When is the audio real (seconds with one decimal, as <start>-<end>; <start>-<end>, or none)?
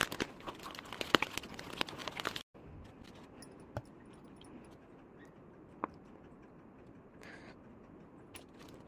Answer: 0.0-8.9